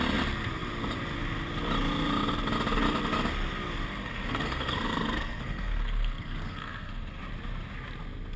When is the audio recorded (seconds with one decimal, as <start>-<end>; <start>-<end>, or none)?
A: 0.0-4.0; 7.2-8.4

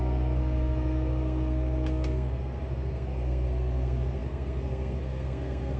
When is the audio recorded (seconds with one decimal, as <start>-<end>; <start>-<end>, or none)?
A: none

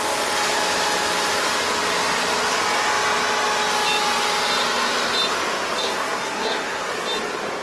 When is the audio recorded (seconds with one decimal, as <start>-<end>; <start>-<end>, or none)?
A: 0.0-5.8; 6.9-7.6

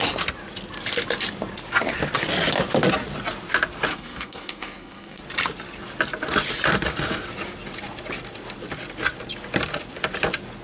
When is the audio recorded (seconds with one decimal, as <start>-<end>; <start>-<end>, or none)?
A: 0.0-3.9; 5.2-10.6

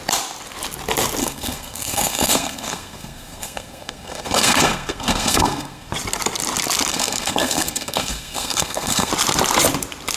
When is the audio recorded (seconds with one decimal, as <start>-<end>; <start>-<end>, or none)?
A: 0.0-1.2; 5.9-6.9; 9.1-10.2

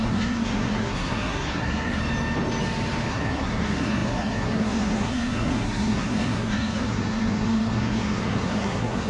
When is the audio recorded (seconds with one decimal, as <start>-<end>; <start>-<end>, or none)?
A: 2.0-3.1